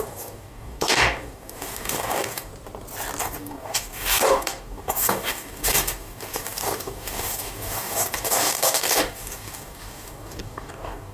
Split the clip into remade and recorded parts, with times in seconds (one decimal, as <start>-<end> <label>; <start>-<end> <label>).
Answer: 0.0-2.5 remade; 2.5-3.2 recorded; 3.2-11.1 remade